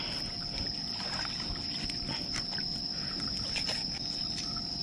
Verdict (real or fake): real